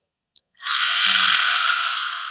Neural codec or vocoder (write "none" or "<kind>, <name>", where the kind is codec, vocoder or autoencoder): codec, SNAC